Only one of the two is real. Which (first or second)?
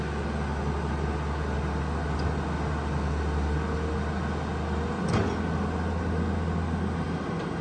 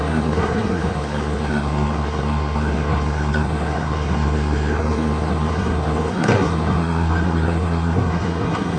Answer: first